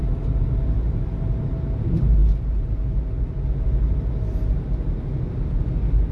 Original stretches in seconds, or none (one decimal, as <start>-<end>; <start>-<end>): 0.0-6.1